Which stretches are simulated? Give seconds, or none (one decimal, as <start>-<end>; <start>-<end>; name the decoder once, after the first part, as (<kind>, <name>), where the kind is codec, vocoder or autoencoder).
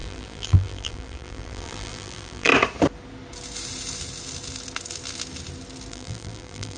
0.0-2.5 (vocoder, BigVGAN v2); 5.9-6.8